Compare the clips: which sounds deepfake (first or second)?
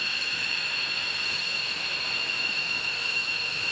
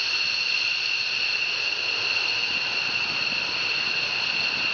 first